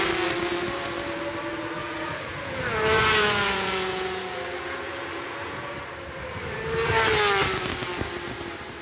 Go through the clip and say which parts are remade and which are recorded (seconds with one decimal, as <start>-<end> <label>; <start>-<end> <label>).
0.0-1.8 recorded; 1.8-5.7 remade; 5.7-8.8 recorded